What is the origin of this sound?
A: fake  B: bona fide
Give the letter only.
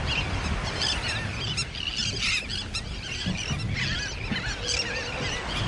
B